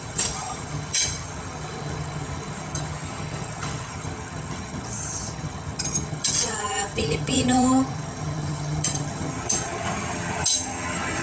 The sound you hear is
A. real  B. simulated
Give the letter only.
B